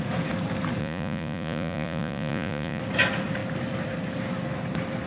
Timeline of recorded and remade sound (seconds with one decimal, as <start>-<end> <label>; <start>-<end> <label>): 0.0-0.8 recorded; 0.8-2.8 remade; 2.8-5.1 recorded